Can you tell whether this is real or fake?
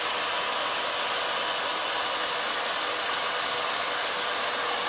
real